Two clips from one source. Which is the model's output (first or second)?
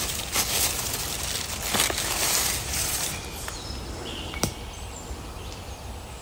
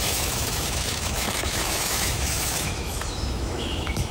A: second